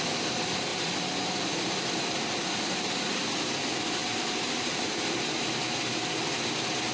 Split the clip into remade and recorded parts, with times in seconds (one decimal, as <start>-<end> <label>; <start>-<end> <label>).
0.0-6.9 recorded